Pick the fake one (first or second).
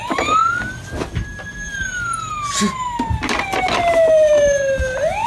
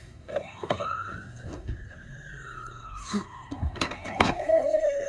second